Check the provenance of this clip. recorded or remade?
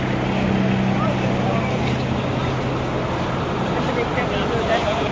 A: recorded